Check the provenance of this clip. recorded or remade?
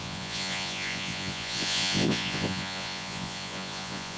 remade